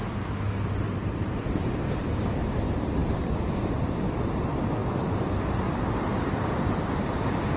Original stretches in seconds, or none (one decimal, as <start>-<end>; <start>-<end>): 0.0-0.9